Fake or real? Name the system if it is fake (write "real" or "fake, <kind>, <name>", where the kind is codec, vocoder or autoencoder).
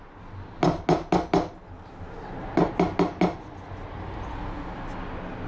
real